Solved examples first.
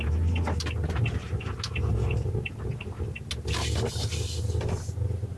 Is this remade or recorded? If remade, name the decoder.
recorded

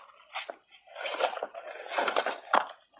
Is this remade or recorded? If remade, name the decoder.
recorded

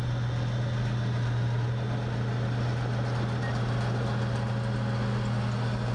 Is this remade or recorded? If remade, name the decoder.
recorded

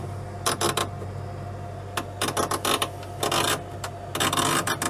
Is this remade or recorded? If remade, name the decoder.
recorded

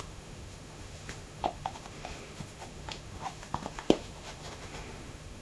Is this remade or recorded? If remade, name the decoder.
remade, autoencoder, DAC-VAE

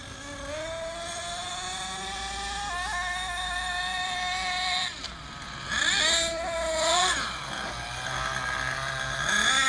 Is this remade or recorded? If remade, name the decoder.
recorded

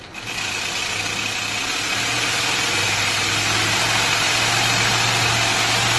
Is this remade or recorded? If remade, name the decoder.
recorded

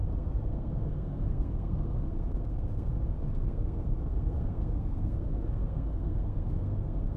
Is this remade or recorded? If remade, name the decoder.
remade, codec, SNAC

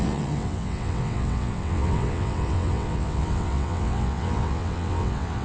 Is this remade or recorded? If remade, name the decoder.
remade, vocoder, WaveNeXt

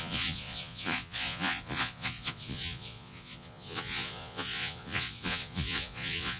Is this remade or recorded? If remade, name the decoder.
remade, vocoder, Vocos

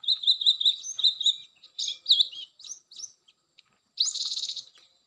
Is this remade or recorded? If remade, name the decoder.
recorded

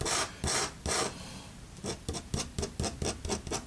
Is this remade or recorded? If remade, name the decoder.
recorded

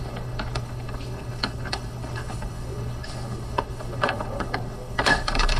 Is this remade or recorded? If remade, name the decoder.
remade, codec, HILCodec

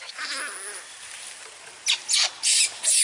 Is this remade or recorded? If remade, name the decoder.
recorded